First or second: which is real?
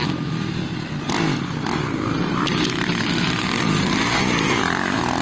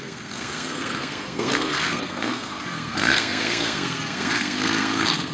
first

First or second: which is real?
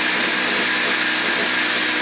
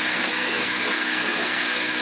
first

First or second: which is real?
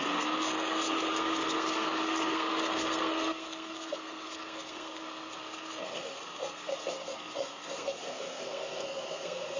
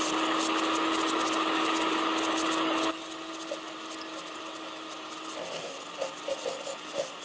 second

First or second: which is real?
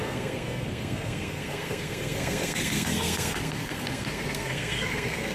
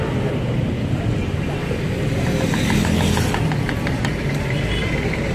second